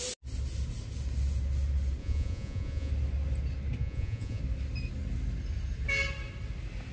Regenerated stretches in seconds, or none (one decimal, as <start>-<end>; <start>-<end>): 2.0-2.9; 3.8-4.4